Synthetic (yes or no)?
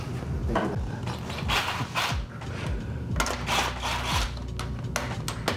no